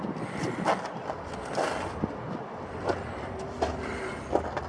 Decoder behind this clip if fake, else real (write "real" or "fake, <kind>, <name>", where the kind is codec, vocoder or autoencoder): real